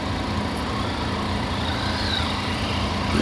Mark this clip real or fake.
real